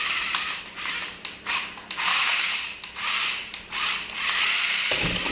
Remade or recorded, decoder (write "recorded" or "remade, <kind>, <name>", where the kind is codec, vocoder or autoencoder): recorded